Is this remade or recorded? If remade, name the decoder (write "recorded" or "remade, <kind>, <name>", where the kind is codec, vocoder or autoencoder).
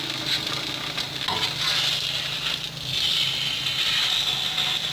recorded